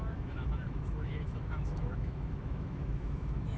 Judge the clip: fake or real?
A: fake